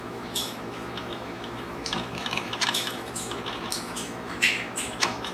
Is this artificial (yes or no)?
yes